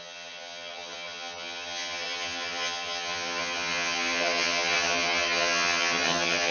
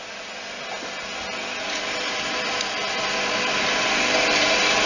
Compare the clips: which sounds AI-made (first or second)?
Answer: first